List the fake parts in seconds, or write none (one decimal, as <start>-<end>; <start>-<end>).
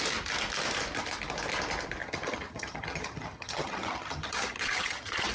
2.0-5.3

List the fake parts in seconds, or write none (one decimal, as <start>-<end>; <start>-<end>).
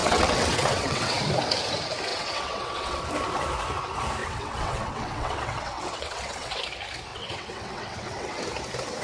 0.0-1.2; 2.1-3.0; 4.2-6.6; 7.1-8.4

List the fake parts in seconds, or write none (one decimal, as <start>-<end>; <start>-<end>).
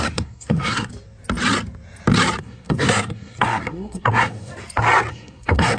0.0-0.9; 2.4-4.5; 5.1-5.8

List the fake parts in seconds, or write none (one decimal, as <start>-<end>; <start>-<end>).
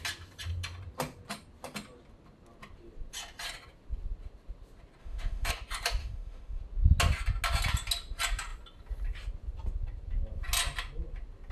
5.0-5.5; 6.0-6.6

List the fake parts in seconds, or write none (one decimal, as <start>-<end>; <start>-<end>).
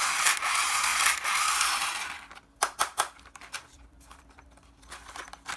0.9-4.3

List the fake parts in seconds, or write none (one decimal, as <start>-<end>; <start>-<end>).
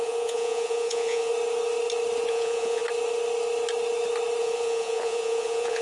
0.0-1.3; 2.3-2.8; 4.4-5.8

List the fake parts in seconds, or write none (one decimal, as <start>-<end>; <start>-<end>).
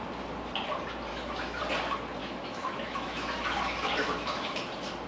1.1-1.6; 2.2-4.6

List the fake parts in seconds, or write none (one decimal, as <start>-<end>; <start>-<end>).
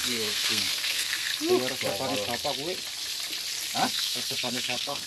0.0-1.3; 3.9-5.1